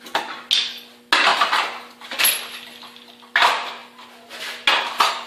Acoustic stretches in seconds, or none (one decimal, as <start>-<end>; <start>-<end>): 0.0-5.3